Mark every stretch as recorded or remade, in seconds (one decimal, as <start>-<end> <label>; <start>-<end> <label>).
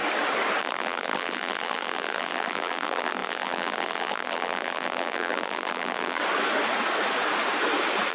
0.0-0.6 recorded; 0.6-6.2 remade; 6.2-8.1 recorded